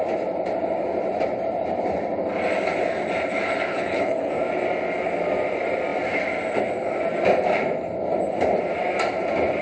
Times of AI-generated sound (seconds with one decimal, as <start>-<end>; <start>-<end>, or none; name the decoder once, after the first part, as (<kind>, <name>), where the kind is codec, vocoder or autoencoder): 3.7-4.3 (codec, HILCodec)